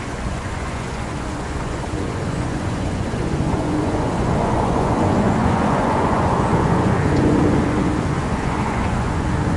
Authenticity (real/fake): fake